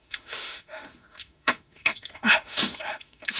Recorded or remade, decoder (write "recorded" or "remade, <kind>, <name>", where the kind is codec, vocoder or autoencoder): remade, autoencoder, DAC-VAE